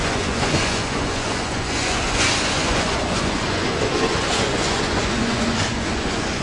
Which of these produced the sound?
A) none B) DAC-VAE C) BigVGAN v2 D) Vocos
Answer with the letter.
D